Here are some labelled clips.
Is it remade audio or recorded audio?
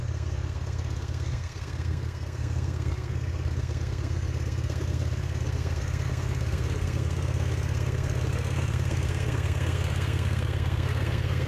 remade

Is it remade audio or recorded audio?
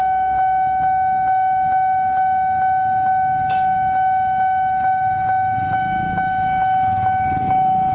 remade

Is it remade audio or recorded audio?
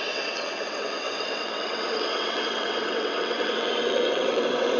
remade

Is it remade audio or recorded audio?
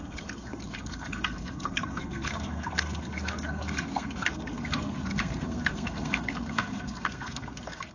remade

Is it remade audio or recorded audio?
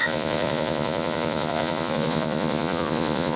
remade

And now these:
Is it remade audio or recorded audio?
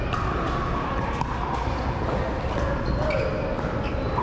recorded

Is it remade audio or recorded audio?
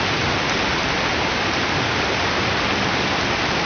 recorded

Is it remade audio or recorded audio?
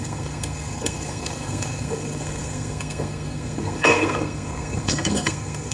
remade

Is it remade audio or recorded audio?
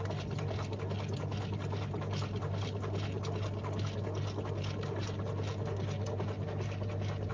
recorded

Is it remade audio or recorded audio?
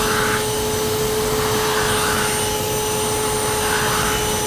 recorded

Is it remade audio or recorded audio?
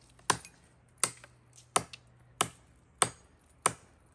recorded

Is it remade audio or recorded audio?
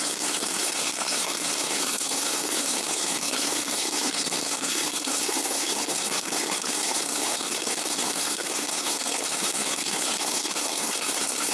remade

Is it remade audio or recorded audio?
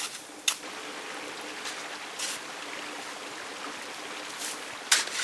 recorded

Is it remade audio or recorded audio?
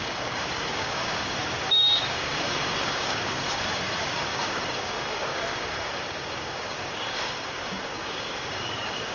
remade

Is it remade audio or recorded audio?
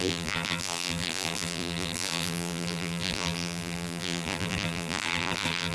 remade